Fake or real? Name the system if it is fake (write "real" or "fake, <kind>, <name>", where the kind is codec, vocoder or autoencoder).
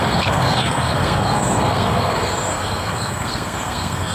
fake, codec, SNAC